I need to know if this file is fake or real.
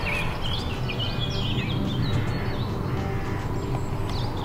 real